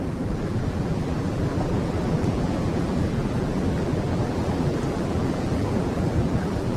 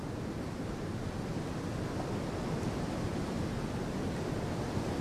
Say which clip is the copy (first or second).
first